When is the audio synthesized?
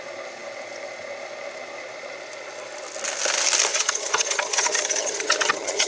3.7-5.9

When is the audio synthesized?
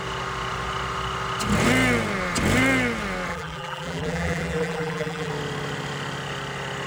3.3-5.3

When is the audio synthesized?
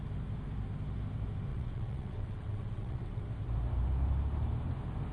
1.5-3.2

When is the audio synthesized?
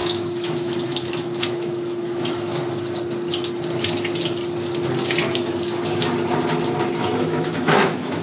0.0-2.6; 7.0-8.2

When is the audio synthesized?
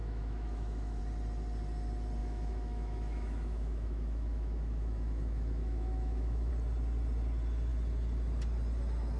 0.0-1.0; 2.2-6.5